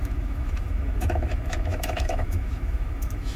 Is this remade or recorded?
remade